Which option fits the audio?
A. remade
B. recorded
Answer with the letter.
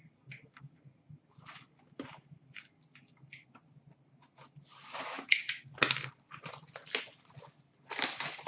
B